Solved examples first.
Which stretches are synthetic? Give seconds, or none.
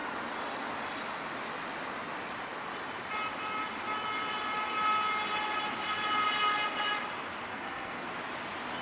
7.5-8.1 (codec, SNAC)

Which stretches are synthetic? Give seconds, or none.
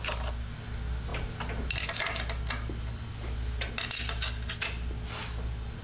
none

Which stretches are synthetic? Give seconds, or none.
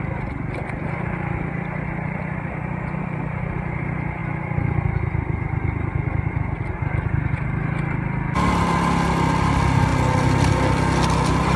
none